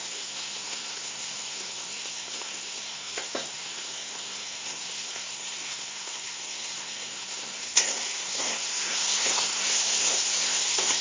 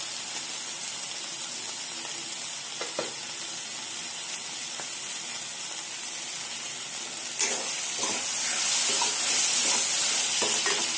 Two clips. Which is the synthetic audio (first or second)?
first